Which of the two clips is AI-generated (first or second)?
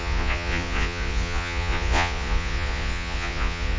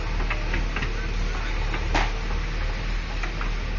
first